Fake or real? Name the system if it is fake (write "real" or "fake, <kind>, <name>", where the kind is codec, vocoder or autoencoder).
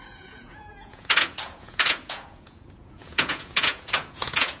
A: fake, vocoder, Vocos